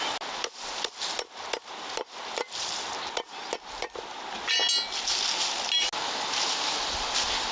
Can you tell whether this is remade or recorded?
recorded